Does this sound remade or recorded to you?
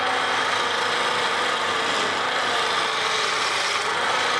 recorded